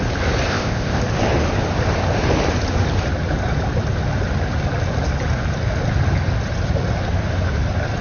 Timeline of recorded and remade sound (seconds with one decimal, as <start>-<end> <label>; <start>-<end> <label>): 0.0-0.5 recorded; 0.5-1.0 remade; 1.0-8.0 recorded